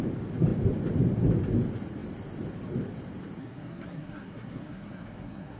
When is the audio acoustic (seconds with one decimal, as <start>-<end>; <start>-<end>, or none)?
0.0-3.4